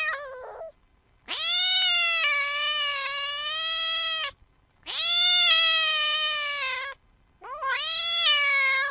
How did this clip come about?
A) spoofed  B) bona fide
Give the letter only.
B